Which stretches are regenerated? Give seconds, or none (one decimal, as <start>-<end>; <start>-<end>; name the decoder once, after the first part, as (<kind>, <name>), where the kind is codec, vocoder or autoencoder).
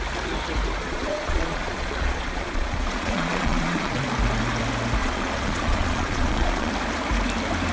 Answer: 0.8-4.0 (vocoder, Vocos); 5.0-6.7